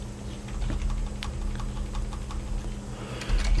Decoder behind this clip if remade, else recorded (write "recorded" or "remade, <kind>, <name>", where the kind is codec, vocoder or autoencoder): recorded